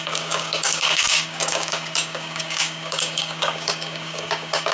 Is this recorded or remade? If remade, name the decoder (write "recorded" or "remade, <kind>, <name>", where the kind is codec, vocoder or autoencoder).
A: remade, codec, DAC